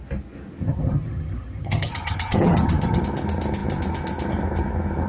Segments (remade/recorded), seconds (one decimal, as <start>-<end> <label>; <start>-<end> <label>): 0.0-0.6 recorded; 0.6-3.0 remade; 3.0-5.1 recorded